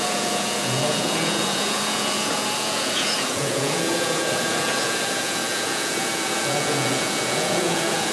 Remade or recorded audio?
remade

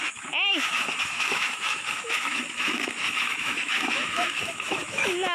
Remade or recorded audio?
remade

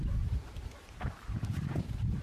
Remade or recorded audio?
recorded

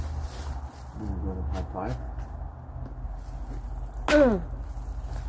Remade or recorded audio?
recorded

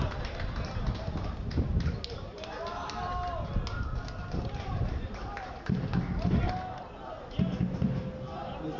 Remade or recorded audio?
recorded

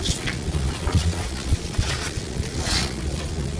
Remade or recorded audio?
remade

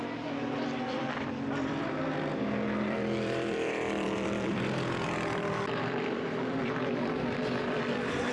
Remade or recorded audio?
remade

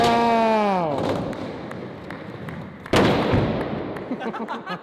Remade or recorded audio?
recorded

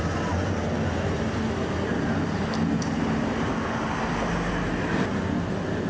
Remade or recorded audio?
recorded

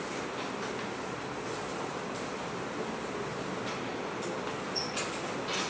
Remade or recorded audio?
recorded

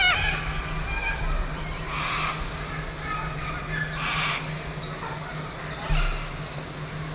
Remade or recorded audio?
recorded